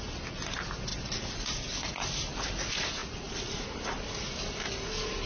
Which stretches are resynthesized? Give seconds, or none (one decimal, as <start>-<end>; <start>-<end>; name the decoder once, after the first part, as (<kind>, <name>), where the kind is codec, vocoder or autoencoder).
0.9-2.5 (vocoder, BigVGAN v2); 3.0-4.2